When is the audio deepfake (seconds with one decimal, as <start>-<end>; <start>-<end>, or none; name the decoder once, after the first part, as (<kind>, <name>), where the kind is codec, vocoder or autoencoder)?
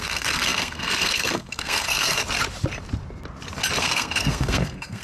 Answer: 0.0-2.2 (codec, SNAC); 3.8-5.0